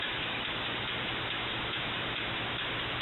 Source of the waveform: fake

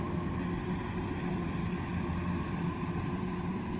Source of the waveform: fake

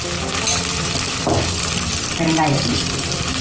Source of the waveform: fake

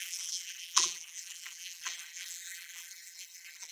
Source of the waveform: fake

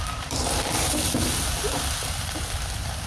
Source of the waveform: fake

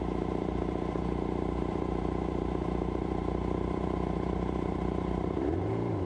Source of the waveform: fake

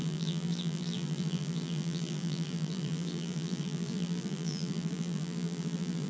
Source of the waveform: fake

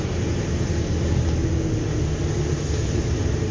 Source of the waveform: real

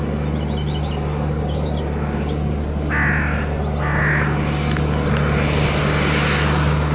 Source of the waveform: real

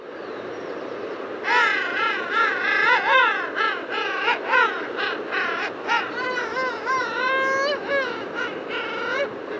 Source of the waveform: real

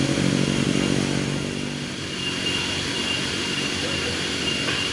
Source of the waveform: real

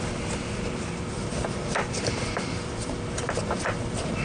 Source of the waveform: fake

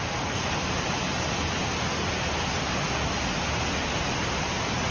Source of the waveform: real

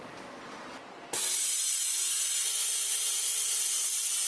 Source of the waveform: real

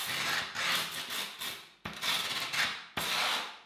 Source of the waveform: real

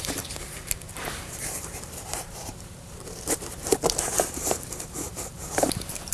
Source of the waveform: fake